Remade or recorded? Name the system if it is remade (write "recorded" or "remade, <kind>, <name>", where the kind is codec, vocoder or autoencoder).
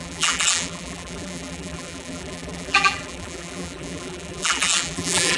remade, vocoder, BigVGAN v2